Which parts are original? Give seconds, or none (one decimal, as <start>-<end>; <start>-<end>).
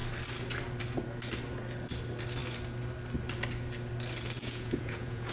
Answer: 0.0-4.4